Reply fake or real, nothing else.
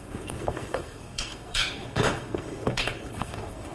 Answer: fake